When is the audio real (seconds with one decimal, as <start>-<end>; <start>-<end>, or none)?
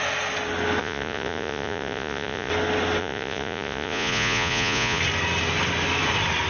0.0-0.8; 2.5-3.0; 5.0-6.5